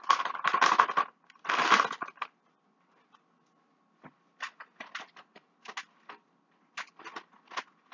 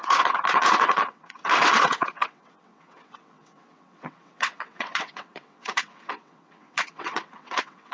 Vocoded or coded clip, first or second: second